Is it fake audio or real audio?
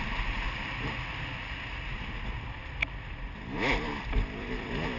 real